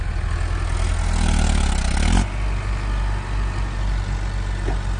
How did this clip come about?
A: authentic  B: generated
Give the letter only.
A